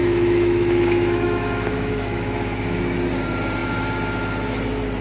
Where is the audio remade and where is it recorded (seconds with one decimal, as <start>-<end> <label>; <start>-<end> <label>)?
0.0-2.8 remade; 2.8-5.0 recorded